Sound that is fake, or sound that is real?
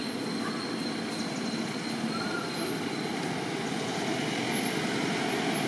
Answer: real